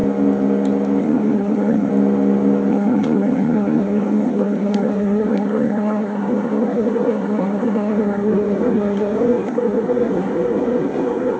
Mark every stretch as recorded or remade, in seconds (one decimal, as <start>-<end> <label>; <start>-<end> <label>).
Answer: 0.0-1.0 recorded; 1.0-1.9 remade; 1.9-2.7 recorded; 2.7-11.4 remade